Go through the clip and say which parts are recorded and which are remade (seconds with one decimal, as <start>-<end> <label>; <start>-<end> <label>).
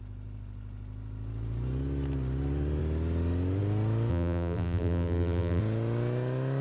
0.0-4.1 recorded; 4.1-5.6 remade; 5.6-6.6 recorded